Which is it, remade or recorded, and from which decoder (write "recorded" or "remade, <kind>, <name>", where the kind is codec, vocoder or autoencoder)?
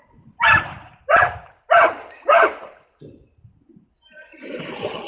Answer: recorded